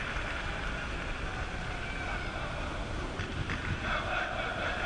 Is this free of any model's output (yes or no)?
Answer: yes